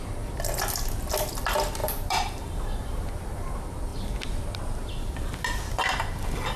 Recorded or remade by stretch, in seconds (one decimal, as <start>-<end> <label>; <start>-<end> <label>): 0.0-1.8 recorded; 1.8-3.5 remade; 3.5-6.6 recorded